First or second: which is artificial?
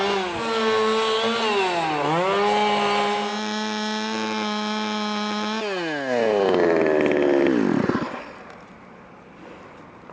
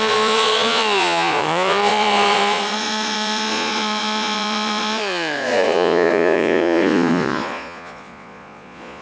second